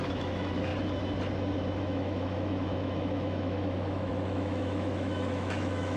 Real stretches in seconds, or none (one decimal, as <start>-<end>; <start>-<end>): 0.7-1.8